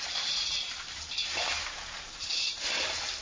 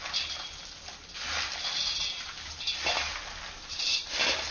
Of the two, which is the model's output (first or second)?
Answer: first